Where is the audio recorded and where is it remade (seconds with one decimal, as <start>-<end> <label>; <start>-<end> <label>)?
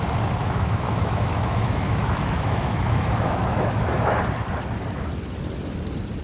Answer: 0.0-0.4 recorded; 0.4-4.1 remade; 4.1-6.2 recorded